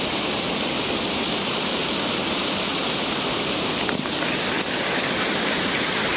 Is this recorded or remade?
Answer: remade